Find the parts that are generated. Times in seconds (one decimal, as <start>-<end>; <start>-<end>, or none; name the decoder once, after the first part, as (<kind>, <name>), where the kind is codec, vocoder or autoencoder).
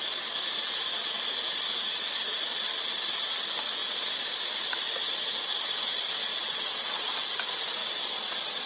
3.8-4.3 (vocoder, Vocos); 6.3-7.2; 7.8-8.7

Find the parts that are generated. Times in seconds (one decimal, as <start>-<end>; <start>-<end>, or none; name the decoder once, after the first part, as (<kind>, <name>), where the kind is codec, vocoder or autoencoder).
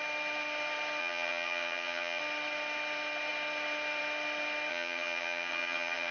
1.0-2.2 (vocoder, HiFi-GAN); 4.7-6.1